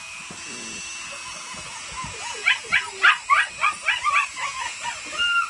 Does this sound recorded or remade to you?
recorded